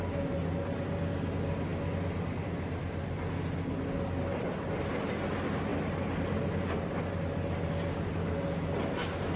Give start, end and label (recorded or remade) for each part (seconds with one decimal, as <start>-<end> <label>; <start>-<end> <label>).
0.0-9.4 recorded